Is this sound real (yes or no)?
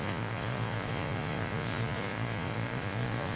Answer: no